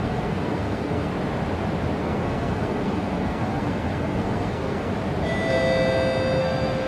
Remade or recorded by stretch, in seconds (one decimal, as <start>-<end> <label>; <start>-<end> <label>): 0.0-1.1 remade; 1.1-2.0 recorded; 2.0-4.9 remade; 4.9-6.4 recorded; 6.4-6.9 remade